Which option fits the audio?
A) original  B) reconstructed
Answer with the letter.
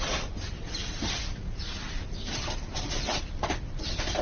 A